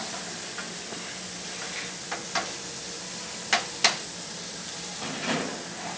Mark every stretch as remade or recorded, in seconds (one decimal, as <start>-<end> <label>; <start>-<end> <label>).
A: 0.0-6.0 recorded